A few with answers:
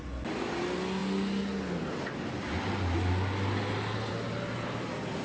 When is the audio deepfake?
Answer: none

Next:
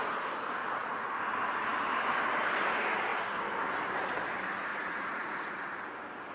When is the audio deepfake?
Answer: 0.6-1.2; 4.7-5.8

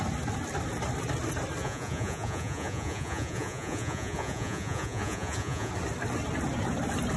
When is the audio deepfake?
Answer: 1.6-5.7